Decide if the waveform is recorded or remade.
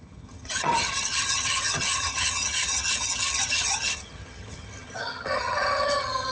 remade